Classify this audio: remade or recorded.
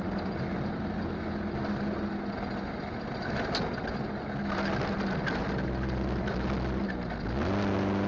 recorded